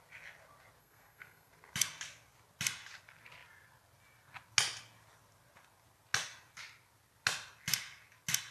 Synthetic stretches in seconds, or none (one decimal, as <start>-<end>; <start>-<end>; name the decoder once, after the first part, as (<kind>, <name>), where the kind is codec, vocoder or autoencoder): 0.8-1.5 (codec, SNAC)